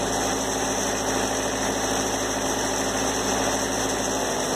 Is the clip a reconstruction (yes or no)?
no